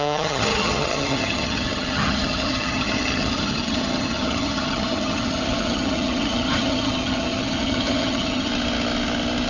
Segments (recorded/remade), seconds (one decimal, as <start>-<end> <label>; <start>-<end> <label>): 0.0-8.5 remade; 8.5-9.5 recorded